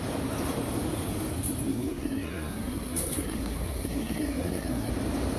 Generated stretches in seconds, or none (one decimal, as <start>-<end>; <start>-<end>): 1.7-4.9